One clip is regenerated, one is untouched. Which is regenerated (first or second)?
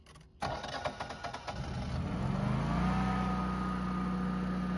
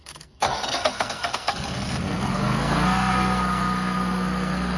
second